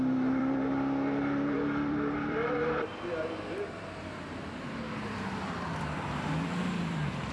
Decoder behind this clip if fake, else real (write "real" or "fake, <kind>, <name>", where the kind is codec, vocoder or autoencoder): fake, vocoder, BigVGAN v2